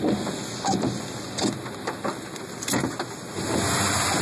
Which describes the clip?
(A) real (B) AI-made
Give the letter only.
A